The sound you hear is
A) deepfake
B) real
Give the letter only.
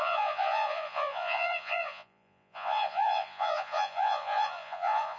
A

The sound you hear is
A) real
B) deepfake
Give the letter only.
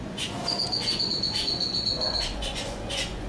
B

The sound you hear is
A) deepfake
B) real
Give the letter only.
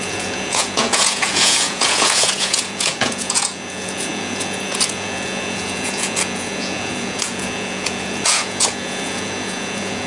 A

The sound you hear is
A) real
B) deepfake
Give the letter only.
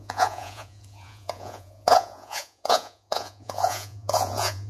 B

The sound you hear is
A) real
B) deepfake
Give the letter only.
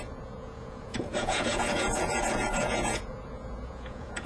B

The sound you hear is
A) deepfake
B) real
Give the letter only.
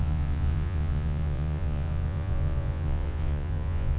A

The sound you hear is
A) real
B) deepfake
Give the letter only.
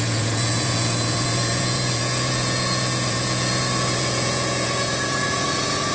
B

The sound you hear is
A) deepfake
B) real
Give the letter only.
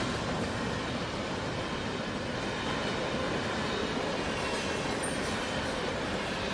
B